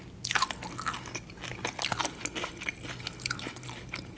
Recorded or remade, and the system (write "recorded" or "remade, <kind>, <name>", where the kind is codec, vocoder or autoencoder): recorded